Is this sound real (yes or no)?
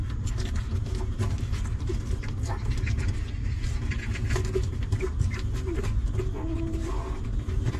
yes